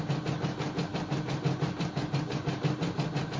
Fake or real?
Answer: real